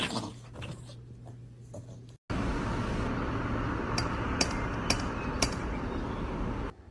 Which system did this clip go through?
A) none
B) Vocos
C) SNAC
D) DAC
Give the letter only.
A